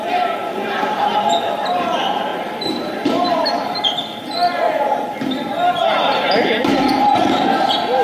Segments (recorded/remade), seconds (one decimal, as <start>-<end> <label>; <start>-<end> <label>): 0.0-2.3 recorded; 2.3-7.0 remade; 7.0-8.0 recorded